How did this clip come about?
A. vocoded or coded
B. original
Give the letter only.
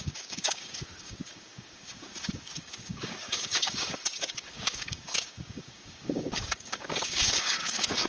A